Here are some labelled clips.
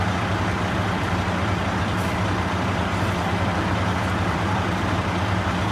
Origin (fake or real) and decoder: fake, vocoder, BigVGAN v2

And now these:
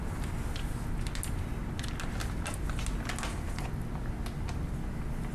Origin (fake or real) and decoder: real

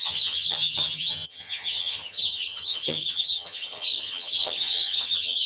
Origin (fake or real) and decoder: fake, vocoder, HiFi-GAN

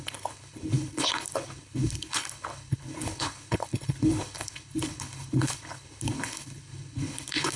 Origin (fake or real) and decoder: fake, codec, HILCodec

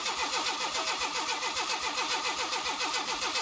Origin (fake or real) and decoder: real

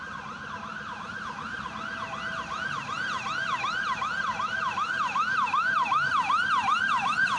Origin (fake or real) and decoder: real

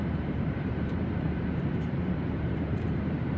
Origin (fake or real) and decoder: fake, vocoder, BigVGAN v2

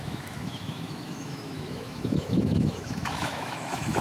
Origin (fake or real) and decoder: fake, autoencoder, DAC-VAE